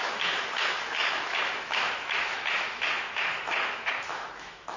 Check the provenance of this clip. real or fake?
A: fake